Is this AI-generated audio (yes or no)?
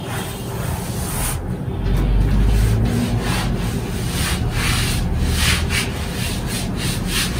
no